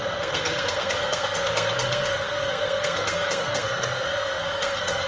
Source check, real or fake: fake